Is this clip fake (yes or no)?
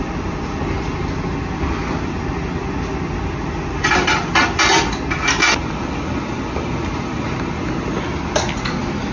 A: no